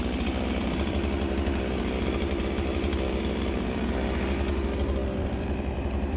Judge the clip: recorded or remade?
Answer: remade